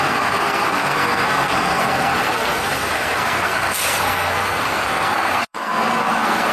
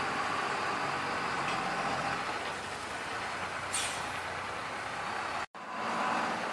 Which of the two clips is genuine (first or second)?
second